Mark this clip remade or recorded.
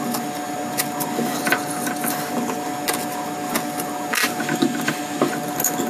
recorded